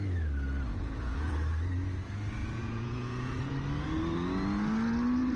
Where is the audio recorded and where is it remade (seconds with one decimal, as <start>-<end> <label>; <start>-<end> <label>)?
0.0-0.7 recorded; 0.7-1.3 remade; 1.3-2.4 recorded; 2.4-3.5 remade; 3.5-5.4 recorded